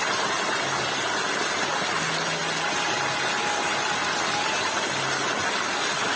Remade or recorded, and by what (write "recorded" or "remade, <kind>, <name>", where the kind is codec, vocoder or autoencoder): recorded